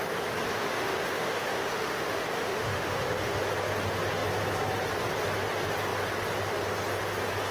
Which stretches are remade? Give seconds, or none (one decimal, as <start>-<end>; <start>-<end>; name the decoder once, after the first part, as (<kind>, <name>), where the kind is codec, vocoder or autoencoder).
0.6-3.4 (autoencoder, DAC-VAE)